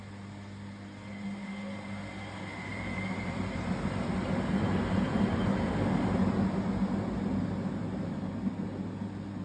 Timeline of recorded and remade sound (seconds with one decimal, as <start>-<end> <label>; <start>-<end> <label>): 0.0-2.7 recorded; 2.7-5.2 remade; 5.2-9.4 recorded